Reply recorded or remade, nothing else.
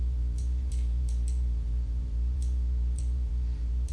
remade